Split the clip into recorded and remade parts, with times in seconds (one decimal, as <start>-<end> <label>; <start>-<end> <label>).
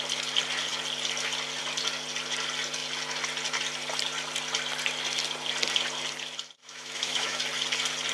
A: 0.0-6.6 recorded; 6.6-7.4 remade; 7.4-8.1 recorded